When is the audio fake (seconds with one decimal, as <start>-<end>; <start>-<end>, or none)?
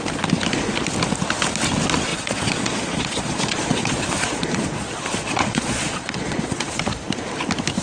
2.1-6.7